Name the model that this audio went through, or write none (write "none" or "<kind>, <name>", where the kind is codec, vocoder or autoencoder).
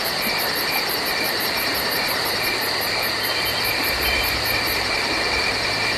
vocoder, BigVGAN v2